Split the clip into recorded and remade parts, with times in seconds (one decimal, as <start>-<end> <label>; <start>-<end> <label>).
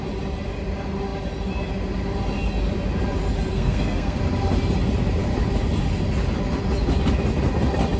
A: 0.0-3.5 recorded; 3.5-4.2 remade; 4.2-8.0 recorded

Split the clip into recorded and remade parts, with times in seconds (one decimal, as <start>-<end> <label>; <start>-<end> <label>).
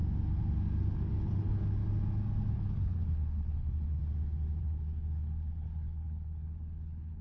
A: 0.0-0.8 recorded; 0.8-1.8 remade; 1.8-2.5 recorded; 2.5-4.0 remade; 4.0-4.6 recorded; 4.6-7.2 remade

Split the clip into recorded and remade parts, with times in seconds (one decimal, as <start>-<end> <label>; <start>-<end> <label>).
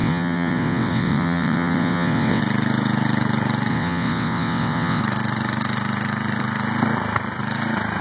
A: 0.0-2.4 remade; 2.4-3.7 recorded; 3.7-5.0 remade; 5.0-8.0 recorded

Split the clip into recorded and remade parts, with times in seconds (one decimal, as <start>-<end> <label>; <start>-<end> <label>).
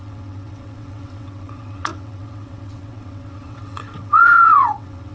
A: 0.0-5.1 remade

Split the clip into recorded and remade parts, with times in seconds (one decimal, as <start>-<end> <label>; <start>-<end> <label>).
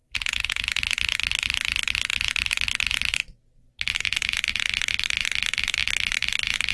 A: 0.0-0.7 remade; 0.7-6.7 recorded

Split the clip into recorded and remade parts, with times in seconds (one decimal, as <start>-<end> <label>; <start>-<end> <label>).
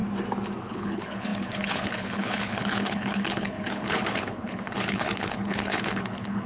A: 0.0-0.6 recorded; 0.6-6.5 remade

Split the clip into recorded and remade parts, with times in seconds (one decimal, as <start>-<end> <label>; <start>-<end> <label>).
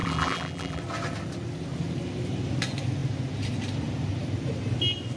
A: 0.0-0.8 remade; 0.8-5.2 recorded